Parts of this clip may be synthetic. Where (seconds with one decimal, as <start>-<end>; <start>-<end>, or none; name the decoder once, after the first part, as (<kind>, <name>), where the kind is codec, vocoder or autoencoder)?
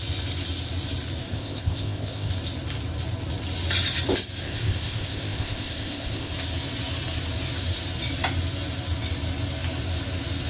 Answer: 1.3-2.3 (codec, ZipCodec); 4.4-6.3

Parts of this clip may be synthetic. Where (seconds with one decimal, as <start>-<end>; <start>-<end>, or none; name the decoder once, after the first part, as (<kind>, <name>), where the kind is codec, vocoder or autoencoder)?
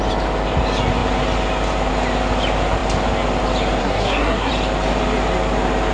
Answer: 3.8-4.5 (codec, SNAC)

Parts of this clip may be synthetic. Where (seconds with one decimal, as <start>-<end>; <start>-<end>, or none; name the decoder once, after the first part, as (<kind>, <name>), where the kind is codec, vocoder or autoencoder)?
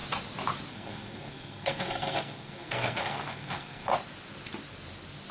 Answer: 0.7-3.9 (codec, SNAC)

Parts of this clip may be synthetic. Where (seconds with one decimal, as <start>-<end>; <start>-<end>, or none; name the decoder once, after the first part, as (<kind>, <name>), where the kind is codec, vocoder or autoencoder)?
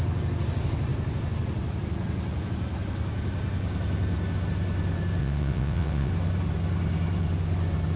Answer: 5.2-6.1 (vocoder, WaveNeXt)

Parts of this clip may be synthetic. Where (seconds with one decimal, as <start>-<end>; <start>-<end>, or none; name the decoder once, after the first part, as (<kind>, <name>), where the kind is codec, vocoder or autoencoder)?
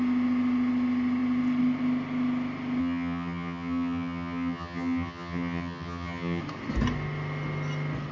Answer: 2.8-6.4 (vocoder, HiFi-GAN)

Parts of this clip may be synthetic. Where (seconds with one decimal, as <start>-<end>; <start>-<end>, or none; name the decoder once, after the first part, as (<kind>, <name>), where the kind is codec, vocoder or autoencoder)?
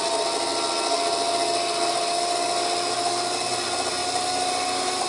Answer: none